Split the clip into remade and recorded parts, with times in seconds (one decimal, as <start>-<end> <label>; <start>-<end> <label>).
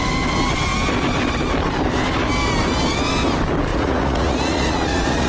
0.0-3.7 recorded; 3.7-5.3 remade